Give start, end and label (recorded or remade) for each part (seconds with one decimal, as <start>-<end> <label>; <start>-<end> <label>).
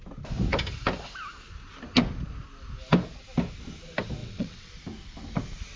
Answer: 0.0-4.2 recorded; 4.2-4.7 remade; 4.7-5.8 recorded